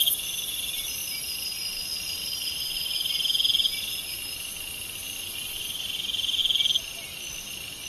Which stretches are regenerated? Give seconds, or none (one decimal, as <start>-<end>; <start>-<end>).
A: 1.0-1.7